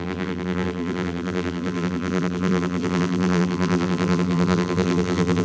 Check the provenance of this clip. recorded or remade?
remade